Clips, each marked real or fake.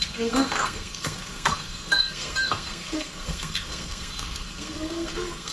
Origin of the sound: fake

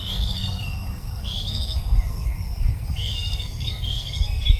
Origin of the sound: fake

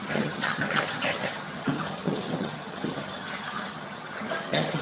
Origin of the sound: fake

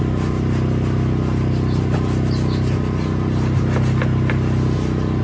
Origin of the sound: real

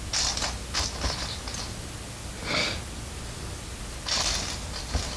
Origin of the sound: real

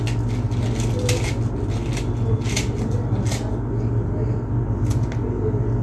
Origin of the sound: real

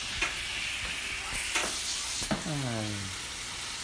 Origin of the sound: real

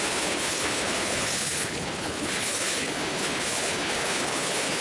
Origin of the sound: fake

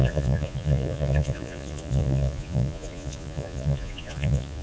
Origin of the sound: fake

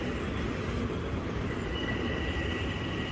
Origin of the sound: real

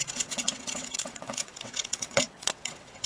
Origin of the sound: fake